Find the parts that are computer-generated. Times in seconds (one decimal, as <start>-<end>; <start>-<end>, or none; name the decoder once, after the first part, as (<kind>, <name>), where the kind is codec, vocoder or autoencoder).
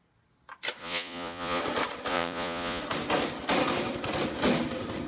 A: 0.8-1.6 (vocoder, Vocos); 2.1-2.8